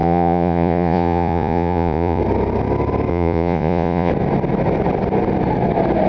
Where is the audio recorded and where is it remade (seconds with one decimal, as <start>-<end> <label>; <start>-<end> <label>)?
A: 0.0-2.2 remade; 2.2-3.1 recorded; 3.1-4.1 remade; 4.1-6.1 recorded